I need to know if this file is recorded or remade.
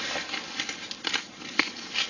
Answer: recorded